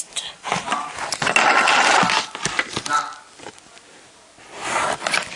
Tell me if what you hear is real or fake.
real